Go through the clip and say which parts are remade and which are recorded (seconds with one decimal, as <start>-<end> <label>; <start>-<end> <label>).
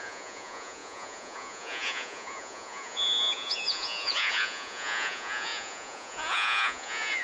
0.0-7.2 remade